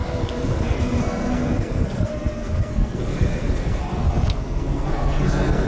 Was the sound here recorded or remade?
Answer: remade